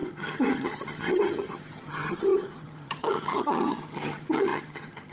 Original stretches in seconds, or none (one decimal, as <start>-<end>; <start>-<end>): none